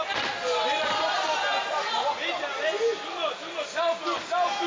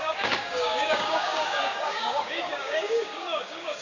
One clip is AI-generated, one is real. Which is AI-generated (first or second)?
second